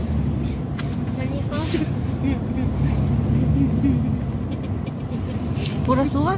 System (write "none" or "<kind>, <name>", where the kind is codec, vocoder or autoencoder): none